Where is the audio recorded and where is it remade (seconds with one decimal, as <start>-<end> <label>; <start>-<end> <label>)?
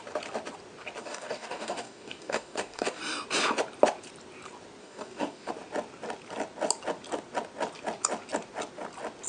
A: 0.0-1.0 recorded; 1.0-3.0 remade; 3.0-4.8 recorded; 4.8-5.5 remade; 5.5-9.3 recorded